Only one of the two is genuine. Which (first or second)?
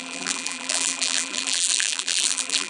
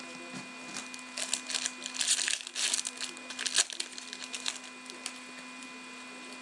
second